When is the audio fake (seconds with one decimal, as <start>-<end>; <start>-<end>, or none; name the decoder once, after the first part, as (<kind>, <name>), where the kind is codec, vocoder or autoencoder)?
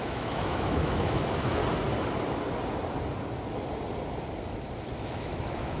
0.0-1.6 (autoencoder, DAC-VAE); 4.8-5.8